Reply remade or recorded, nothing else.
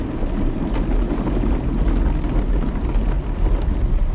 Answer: recorded